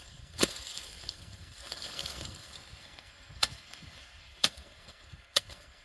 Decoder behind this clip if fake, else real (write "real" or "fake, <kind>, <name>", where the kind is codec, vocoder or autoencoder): fake, codec, SNAC